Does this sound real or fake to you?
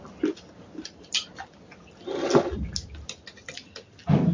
real